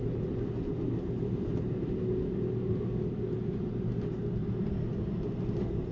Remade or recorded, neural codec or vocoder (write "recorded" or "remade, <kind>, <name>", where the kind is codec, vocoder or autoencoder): recorded